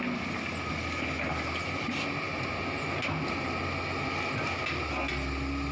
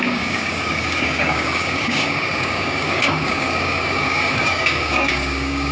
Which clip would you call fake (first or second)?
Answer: second